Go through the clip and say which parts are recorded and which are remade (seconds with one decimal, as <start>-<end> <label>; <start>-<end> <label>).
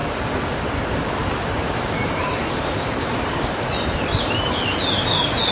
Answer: 0.0-1.2 recorded; 1.2-4.5 remade; 4.5-5.5 recorded